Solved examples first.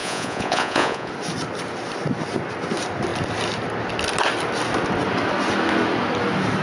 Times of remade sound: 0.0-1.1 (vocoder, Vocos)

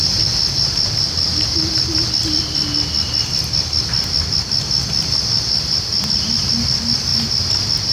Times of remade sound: none

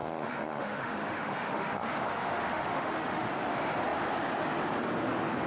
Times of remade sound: 0.0-3.3 (autoencoder, DAC-VAE)

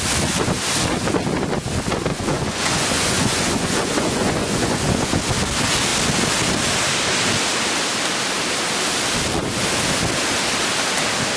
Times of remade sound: 2.1-5.2 (vocoder, Vocos)